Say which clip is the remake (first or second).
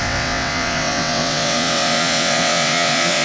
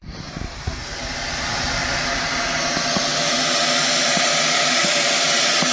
first